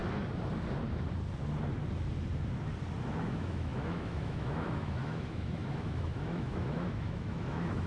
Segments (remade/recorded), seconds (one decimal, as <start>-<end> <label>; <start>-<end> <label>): 0.0-3.0 recorded; 3.0-7.9 remade